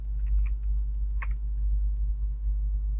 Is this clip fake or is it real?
real